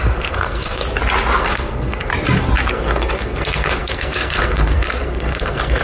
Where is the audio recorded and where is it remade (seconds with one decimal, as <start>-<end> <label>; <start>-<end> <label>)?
0.0-0.8 remade; 0.8-1.4 recorded; 1.4-2.1 remade; 2.1-2.7 recorded; 2.7-5.8 remade